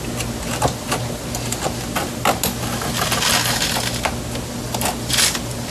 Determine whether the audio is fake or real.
real